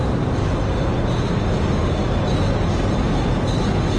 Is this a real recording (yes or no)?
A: yes